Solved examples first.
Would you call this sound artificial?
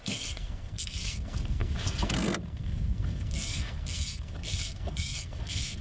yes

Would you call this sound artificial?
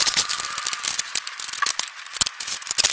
yes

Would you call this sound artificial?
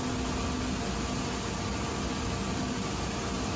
no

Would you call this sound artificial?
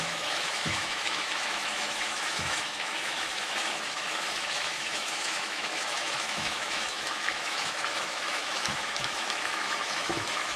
yes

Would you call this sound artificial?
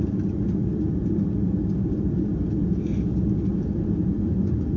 no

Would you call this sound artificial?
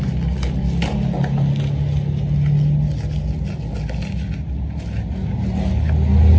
no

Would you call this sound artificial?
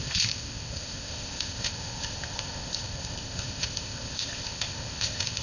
yes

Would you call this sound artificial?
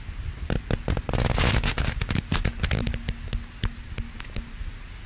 no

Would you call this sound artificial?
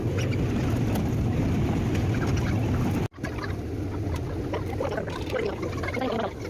no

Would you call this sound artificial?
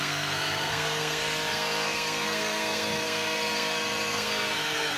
yes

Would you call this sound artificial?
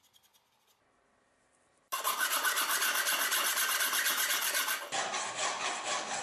no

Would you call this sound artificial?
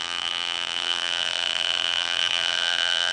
yes